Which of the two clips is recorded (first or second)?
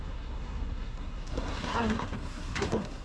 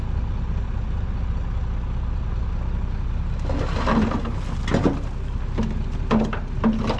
second